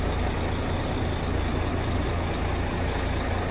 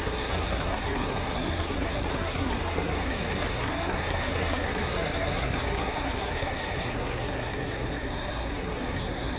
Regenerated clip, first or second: second